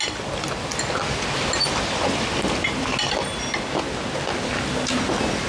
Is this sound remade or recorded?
recorded